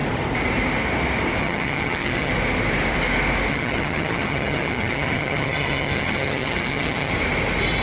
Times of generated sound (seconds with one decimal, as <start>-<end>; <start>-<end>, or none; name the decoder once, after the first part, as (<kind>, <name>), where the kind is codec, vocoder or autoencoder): 1.4-2.3 (vocoder, HiFi-GAN); 3.5-7.1